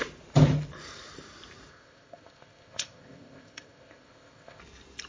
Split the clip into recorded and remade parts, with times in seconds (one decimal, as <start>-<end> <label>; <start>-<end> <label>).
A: 0.0-1.7 recorded; 1.7-4.6 remade; 4.6-5.1 recorded